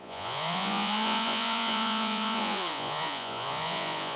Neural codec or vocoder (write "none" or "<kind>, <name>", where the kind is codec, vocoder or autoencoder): vocoder, Vocos